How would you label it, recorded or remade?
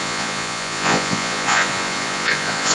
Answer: remade